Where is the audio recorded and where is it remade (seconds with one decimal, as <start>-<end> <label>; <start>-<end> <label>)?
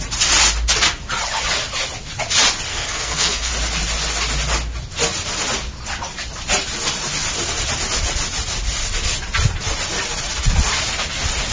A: 0.0-2.7 recorded; 2.7-3.5 remade; 3.5-11.5 recorded